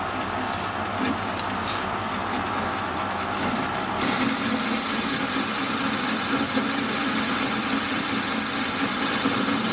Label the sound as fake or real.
real